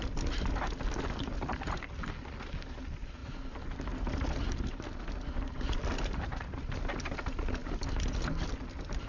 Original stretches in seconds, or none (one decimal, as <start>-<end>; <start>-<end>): 0.0-9.1

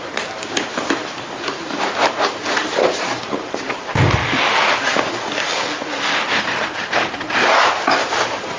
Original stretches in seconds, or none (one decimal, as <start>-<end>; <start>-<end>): 4.2-6.4

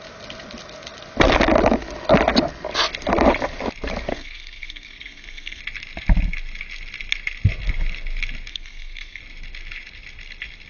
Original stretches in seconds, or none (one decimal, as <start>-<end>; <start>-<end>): 0.0-4.1; 5.6-8.5; 9.2-10.7

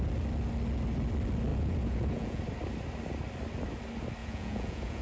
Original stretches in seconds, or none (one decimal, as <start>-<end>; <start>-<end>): 0.0-1.5; 2.4-4.2

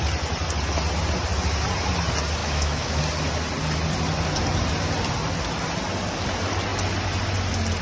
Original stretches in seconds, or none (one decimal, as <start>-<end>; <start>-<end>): 0.0-2.4; 3.0-7.8